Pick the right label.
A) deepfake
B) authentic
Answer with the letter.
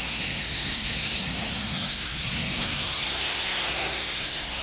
A